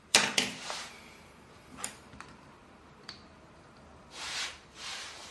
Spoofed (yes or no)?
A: yes